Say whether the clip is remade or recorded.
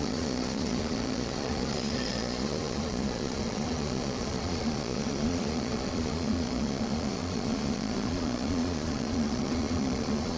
remade